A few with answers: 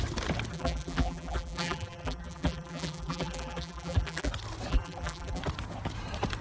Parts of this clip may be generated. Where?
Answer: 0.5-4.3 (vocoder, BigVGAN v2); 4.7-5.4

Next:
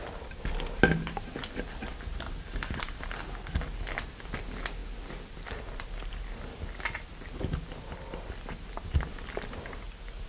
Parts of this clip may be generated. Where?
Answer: none

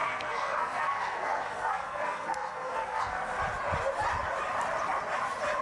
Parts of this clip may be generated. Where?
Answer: 0.0-3.4 (codec, SNAC)

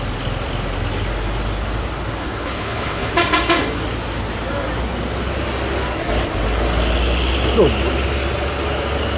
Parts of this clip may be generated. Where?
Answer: 2.2-3.1 (codec, HILCodec)